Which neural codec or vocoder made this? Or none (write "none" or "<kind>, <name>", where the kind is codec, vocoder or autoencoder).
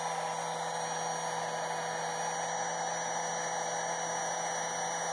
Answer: none